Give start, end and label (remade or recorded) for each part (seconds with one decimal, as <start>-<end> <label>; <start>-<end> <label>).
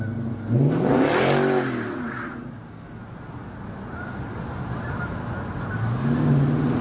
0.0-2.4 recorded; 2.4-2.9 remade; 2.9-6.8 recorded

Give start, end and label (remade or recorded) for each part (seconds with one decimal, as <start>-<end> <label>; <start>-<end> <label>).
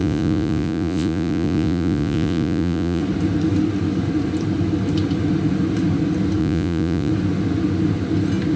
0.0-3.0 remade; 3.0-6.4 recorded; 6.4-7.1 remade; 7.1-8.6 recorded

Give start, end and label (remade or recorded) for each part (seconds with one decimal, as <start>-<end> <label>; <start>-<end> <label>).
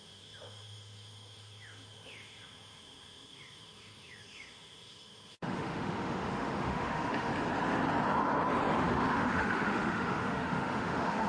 0.0-7.3 remade; 7.3-8.7 recorded; 8.7-11.3 remade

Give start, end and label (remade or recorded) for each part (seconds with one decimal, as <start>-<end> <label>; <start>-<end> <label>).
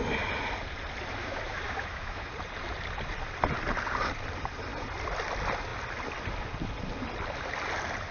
0.0-1.2 recorded; 1.2-2.3 remade; 2.3-8.1 recorded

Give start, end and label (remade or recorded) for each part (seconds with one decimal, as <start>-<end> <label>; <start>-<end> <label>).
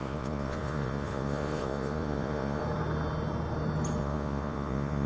0.0-2.6 remade; 2.6-4.0 recorded; 4.0-5.1 remade